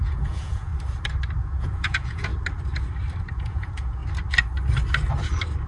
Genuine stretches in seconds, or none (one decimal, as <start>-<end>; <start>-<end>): 0.7-1.4; 2.3-3.3; 4.0-5.7